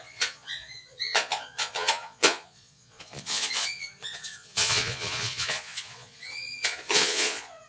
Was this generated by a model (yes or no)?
yes